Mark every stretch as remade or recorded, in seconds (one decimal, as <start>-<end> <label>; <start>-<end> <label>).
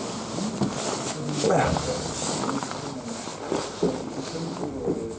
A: 0.0-5.2 recorded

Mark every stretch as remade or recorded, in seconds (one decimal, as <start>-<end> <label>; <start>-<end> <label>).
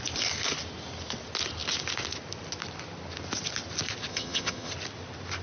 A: 0.0-4.1 recorded; 4.1-4.7 remade; 4.7-5.4 recorded